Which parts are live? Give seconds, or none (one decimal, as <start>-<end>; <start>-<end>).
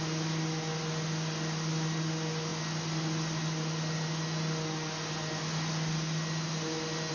0.0-7.1